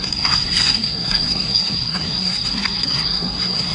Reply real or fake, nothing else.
fake